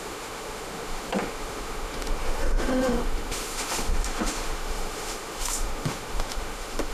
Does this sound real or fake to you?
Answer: fake